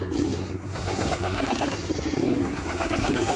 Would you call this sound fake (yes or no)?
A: yes